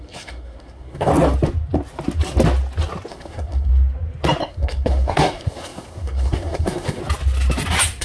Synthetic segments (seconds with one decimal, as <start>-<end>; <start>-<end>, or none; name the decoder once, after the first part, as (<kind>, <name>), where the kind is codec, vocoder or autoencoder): 0.0-1.1 (codec, SNAC); 3.1-3.7; 4.4-7.0